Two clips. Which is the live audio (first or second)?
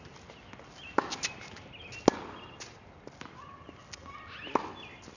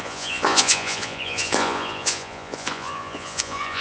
first